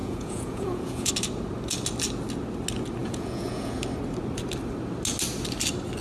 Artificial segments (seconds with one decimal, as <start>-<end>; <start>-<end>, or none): 0.0-1.1; 3.0-3.8